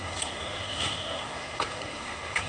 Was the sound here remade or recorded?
remade